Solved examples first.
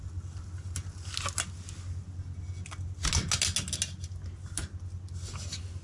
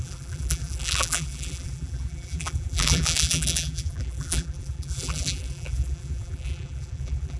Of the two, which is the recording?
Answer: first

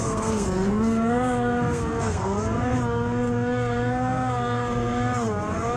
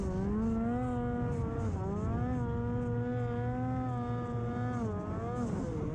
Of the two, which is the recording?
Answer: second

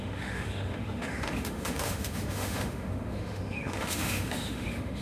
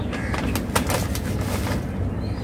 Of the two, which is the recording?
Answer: second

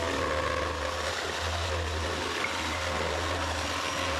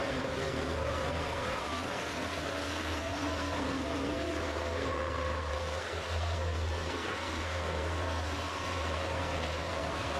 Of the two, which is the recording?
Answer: first